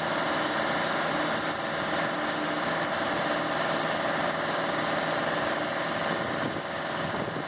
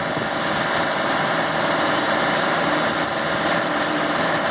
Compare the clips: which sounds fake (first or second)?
second